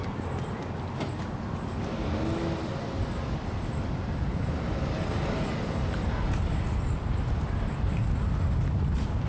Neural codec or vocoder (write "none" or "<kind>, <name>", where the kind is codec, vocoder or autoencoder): none